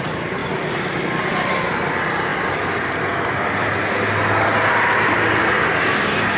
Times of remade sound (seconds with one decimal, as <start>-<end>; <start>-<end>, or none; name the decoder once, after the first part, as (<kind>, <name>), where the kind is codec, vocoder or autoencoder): none